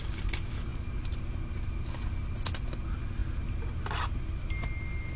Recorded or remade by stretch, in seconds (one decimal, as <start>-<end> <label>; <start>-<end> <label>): 0.0-5.2 recorded